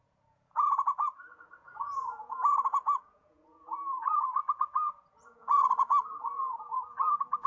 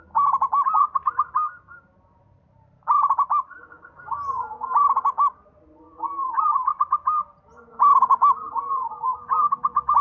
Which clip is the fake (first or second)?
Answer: first